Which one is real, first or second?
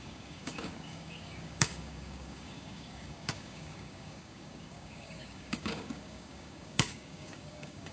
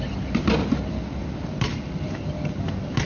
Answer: second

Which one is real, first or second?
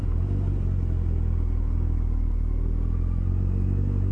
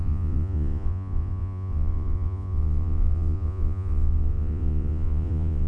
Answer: first